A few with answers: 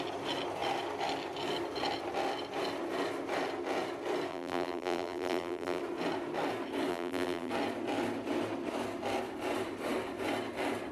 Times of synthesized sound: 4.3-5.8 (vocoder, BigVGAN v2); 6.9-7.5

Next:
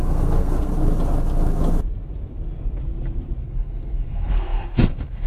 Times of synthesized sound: 0.0-0.7 (codec, SNAC); 3.4-5.3